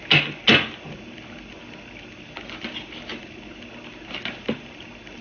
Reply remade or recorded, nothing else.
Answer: recorded